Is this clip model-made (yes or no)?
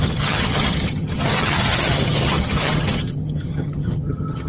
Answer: yes